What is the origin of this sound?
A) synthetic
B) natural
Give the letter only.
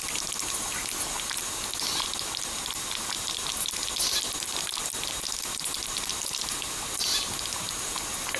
B